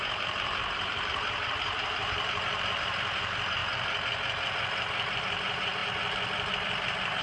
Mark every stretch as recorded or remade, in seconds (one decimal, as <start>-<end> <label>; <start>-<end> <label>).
0.0-3.6 remade; 3.6-5.2 recorded; 5.2-5.8 remade; 5.8-6.5 recorded; 6.5-7.2 remade